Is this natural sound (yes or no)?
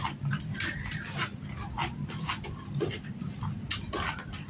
yes